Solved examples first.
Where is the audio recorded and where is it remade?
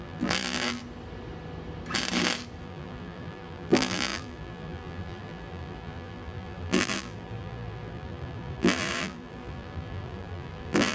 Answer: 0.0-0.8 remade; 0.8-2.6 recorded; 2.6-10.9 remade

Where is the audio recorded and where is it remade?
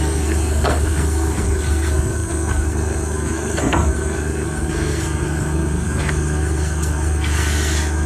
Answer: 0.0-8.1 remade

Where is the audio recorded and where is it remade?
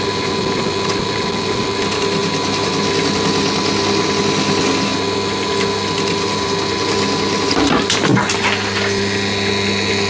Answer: 0.0-10.1 recorded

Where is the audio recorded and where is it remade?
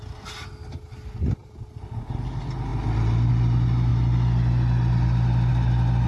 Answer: 0.0-6.1 recorded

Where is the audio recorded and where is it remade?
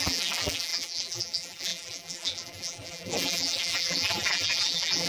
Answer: 0.0-5.1 remade